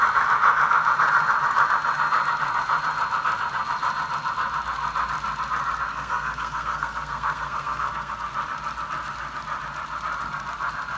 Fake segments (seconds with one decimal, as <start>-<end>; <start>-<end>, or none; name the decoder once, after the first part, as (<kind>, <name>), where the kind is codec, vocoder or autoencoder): 5.9-8.1 (codec, SNAC)